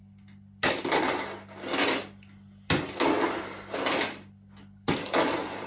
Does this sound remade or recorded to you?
recorded